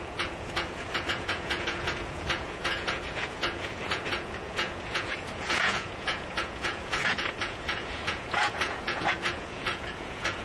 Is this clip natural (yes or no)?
no